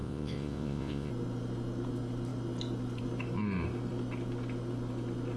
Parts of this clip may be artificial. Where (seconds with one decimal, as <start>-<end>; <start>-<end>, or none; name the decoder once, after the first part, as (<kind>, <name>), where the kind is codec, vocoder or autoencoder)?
0.0-1.1 (vocoder, Vocos)